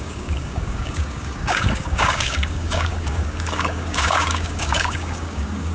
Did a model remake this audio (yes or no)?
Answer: yes